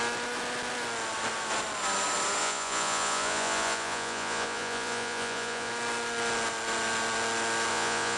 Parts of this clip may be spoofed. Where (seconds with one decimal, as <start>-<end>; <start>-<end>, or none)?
2.4-5.7; 7.7-8.2